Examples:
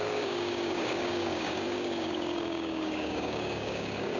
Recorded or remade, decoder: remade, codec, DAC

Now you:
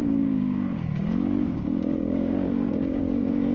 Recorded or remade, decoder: remade, codec, DAC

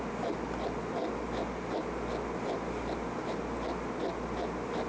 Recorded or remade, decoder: recorded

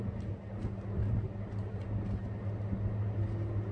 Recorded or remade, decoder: recorded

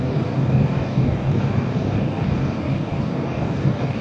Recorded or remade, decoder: remade, codec, DAC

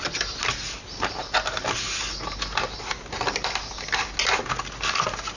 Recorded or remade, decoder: recorded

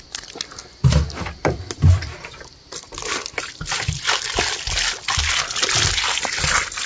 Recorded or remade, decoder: recorded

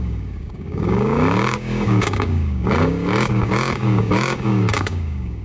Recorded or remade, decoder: remade, codec, DAC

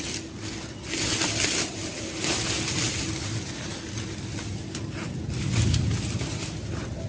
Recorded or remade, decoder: recorded